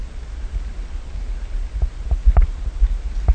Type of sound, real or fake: real